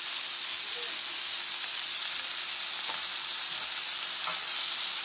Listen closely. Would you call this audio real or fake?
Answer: real